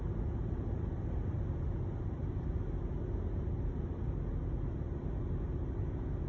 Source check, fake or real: real